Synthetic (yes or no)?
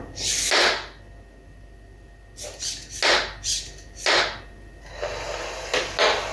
no